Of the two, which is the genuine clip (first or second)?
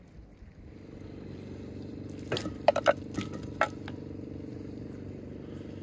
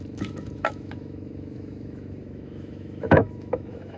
first